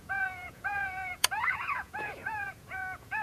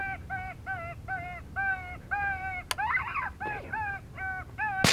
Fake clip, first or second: first